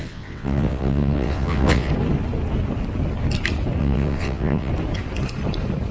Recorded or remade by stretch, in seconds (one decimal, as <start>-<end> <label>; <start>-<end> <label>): 0.0-1.9 remade; 1.9-3.8 recorded; 3.8-4.7 remade; 4.7-5.9 recorded